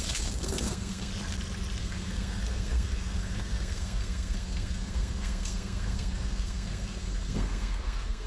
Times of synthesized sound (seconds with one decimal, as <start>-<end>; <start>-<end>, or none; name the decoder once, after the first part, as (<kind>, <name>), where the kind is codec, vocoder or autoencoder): 0.0-1.1 (codec, SNAC); 1.8-8.3